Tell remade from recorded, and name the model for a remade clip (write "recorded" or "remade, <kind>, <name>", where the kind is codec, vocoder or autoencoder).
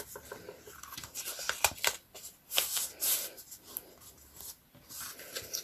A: recorded